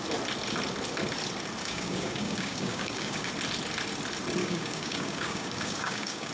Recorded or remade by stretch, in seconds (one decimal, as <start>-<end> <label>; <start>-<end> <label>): 0.0-1.6 recorded; 1.6-3.3 remade; 3.3-4.4 recorded; 4.4-6.3 remade

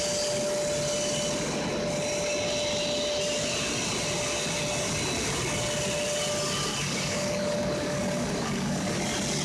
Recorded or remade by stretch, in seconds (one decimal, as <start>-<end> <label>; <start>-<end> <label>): 0.0-6.7 recorded; 6.7-9.0 remade; 9.0-9.4 recorded

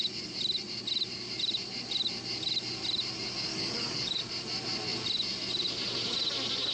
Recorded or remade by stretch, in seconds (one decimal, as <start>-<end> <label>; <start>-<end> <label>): 0.0-3.5 recorded; 3.5-4.2 remade; 4.2-6.7 recorded

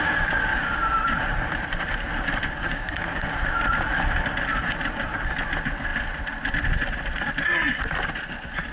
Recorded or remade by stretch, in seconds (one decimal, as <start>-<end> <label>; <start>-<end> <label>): 0.0-0.5 recorded; 0.5-1.0 remade; 1.0-2.6 recorded; 2.6-3.3 remade; 3.3-8.7 recorded

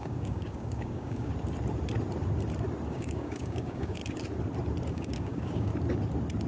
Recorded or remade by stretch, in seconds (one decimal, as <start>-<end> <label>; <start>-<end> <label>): 0.0-1.3 remade; 1.3-2.9 recorded; 2.9-4.0 remade; 4.0-4.9 recorded; 4.9-5.7 remade; 5.7-6.5 recorded